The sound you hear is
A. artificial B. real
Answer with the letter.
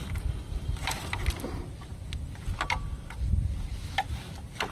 B